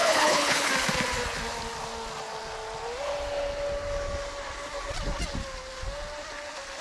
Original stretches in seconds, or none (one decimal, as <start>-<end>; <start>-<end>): 0.7-6.8